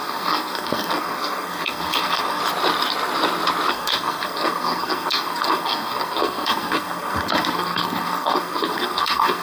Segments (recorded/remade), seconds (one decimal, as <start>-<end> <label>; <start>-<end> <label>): 0.0-2.4 remade; 2.4-3.7 recorded; 3.7-9.4 remade

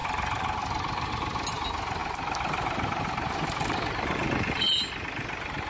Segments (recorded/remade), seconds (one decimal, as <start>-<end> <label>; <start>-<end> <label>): 0.0-5.7 recorded

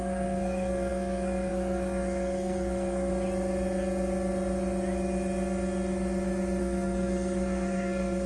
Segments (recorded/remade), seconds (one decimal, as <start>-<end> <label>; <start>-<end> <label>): 0.0-3.1 remade; 3.1-6.6 recorded; 6.6-8.3 remade